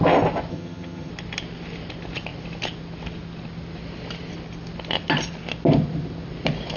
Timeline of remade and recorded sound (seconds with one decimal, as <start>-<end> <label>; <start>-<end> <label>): 0.0-0.5 recorded; 0.5-1.1 remade; 1.1-6.8 recorded